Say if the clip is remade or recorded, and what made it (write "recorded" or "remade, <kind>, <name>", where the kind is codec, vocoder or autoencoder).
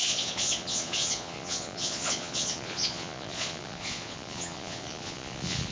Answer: remade, vocoder, Vocos